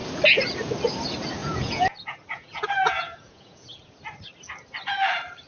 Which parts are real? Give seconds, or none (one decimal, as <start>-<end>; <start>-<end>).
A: 0.0-1.4; 3.9-5.5